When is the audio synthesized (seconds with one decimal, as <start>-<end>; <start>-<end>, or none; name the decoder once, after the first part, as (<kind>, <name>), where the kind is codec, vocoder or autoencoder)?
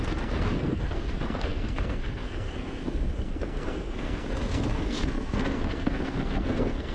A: 0.0-6.9 (codec, SNAC)